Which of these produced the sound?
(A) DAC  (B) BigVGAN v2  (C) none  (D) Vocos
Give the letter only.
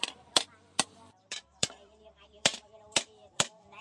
B